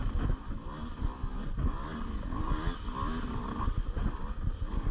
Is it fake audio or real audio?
real